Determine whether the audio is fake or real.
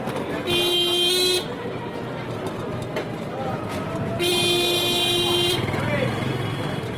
real